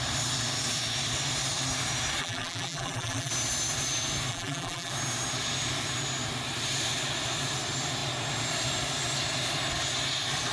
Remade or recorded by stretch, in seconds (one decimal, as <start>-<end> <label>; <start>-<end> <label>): 0.0-2.2 recorded; 2.2-3.3 remade; 3.3-4.3 recorded; 4.3-4.9 remade; 4.9-10.5 recorded